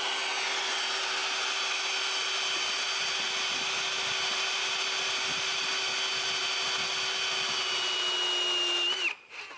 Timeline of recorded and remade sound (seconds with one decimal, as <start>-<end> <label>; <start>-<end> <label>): 0.0-9.6 recorded